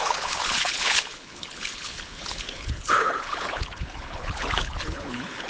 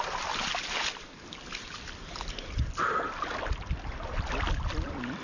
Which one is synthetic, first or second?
first